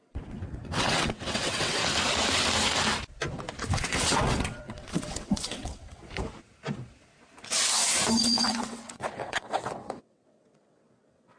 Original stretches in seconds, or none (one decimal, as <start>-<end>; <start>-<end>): 1.8-3.7; 6.0-8.2